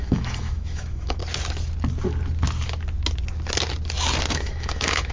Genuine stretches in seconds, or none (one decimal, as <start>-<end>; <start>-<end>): 1.2-4.3